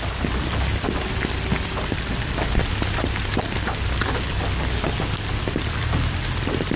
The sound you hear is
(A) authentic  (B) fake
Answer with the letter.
A